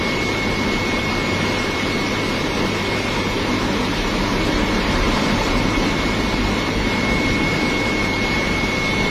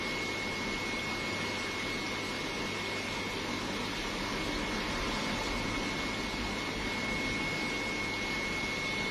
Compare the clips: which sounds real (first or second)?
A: second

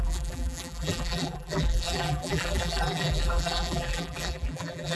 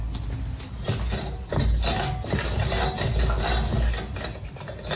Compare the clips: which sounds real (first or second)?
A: second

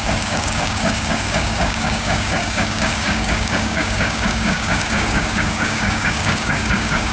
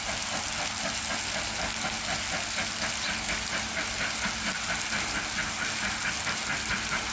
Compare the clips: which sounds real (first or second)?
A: second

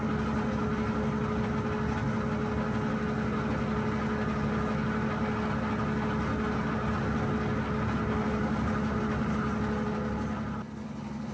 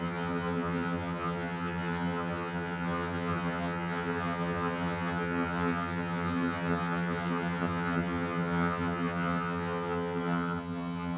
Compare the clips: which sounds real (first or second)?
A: first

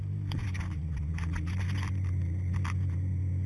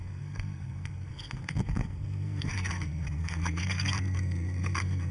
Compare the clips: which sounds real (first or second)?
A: first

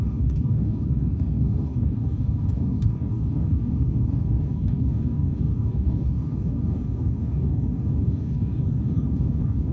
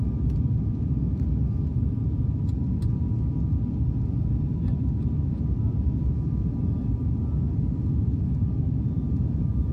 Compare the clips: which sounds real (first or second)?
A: second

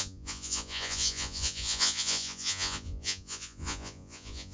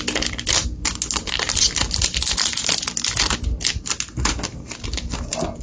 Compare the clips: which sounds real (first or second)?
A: second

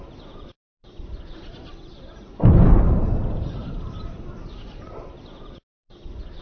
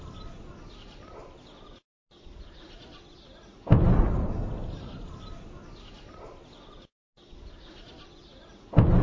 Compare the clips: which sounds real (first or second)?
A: second